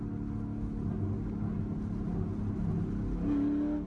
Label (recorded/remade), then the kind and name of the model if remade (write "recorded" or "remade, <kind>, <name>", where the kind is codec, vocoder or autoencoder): recorded